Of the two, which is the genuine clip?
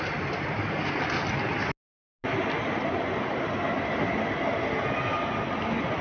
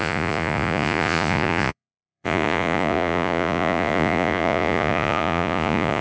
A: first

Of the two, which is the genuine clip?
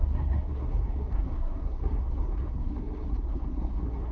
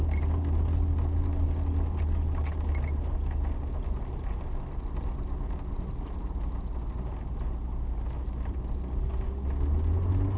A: second